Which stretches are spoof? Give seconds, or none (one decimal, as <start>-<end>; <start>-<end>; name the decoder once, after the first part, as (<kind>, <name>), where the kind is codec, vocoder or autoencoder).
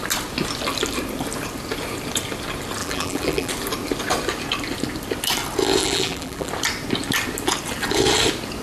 2.8-3.5 (vocoder, BigVGAN v2); 5.8-6.5